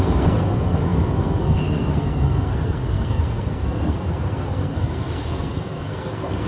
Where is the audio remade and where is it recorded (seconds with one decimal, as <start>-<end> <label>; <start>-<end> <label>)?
0.0-6.5 remade